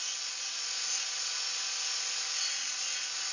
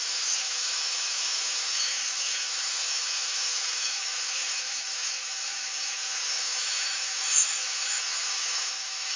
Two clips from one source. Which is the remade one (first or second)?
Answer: second